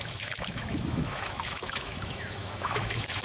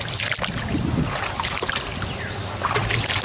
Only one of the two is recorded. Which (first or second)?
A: second